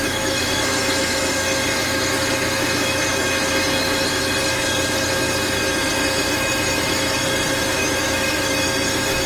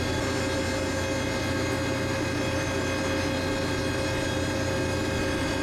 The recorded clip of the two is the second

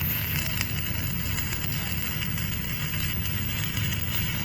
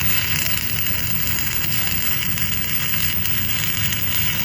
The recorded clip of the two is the first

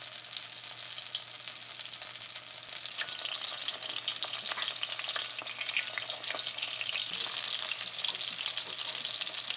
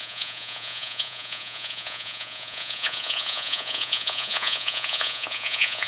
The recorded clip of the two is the first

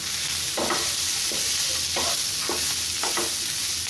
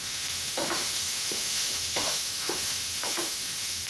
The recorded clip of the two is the first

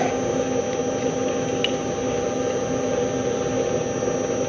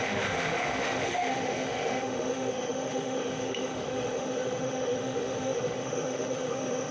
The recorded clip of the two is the first